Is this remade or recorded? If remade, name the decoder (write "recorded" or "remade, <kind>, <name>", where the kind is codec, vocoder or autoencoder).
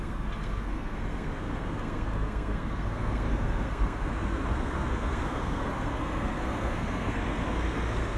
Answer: remade, codec, SNAC